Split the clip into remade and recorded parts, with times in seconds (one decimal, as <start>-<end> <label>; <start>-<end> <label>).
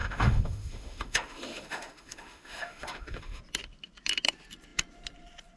0.0-3.4 remade; 3.4-5.6 recorded